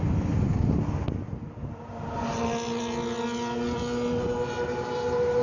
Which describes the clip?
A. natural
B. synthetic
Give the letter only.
A